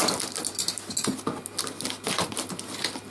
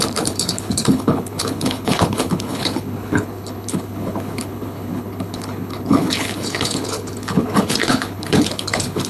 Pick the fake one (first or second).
second